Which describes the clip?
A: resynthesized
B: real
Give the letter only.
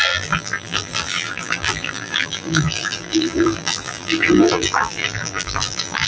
A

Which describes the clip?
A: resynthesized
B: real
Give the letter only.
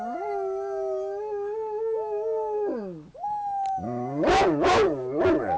B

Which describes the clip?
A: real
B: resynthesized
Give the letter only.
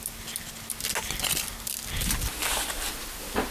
A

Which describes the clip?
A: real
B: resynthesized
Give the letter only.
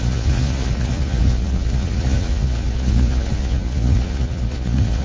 B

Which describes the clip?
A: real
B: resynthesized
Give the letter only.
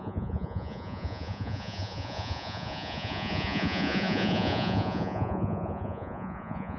B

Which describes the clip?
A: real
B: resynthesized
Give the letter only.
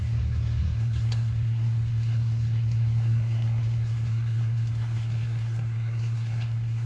B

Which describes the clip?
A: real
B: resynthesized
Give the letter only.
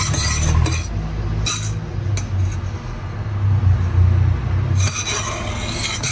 A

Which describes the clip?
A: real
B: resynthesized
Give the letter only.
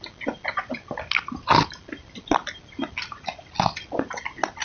A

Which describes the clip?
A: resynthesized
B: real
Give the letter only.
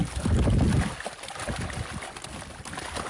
B